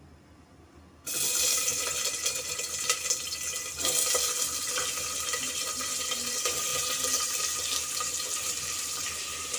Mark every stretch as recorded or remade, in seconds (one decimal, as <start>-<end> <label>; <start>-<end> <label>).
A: 0.0-9.6 recorded